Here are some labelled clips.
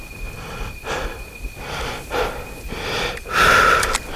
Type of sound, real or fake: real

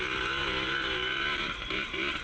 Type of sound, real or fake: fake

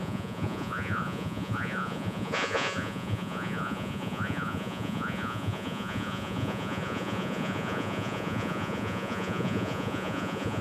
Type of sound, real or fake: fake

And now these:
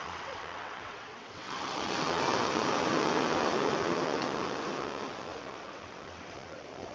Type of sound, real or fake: fake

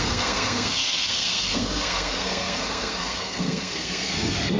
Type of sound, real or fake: fake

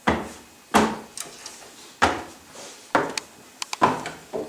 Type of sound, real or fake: real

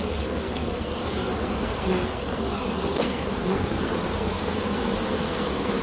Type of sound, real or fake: fake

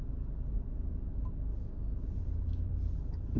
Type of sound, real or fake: real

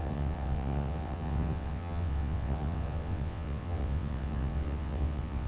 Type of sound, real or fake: fake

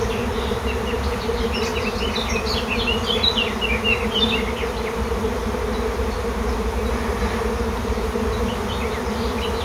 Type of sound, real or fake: real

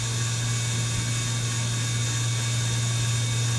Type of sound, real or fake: real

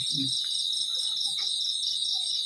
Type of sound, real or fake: real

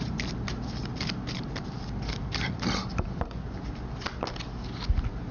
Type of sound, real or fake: real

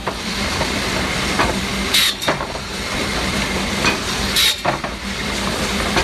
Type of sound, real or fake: fake